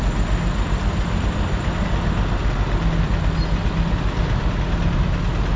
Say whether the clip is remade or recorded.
recorded